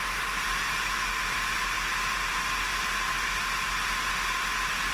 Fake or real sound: real